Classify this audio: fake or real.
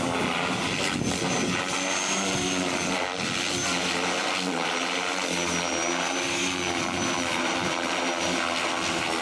real